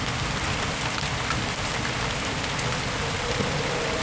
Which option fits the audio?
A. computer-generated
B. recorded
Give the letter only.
A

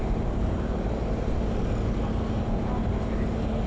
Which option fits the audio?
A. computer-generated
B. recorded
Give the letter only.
B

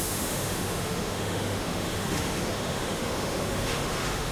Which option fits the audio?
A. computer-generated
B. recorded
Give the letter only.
A